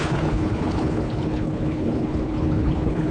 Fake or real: fake